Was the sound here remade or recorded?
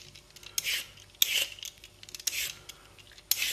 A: recorded